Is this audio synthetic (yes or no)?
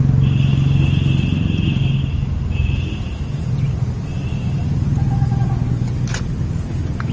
no